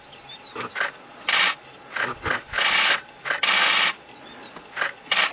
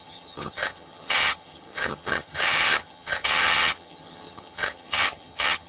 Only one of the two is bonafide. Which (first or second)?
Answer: first